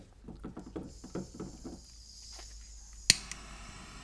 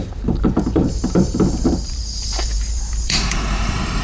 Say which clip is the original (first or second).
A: first